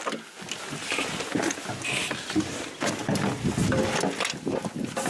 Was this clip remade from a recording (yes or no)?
no